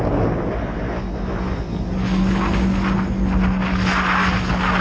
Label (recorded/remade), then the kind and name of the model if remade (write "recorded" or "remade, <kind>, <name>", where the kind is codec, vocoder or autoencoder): recorded